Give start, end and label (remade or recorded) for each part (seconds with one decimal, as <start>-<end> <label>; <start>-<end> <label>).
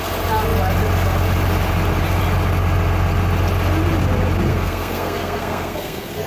0.0-4.5 recorded; 4.5-6.3 remade